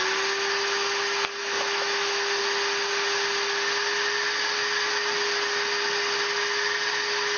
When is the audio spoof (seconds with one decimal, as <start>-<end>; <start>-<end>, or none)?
1.4-2.4